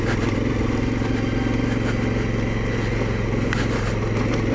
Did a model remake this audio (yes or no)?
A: no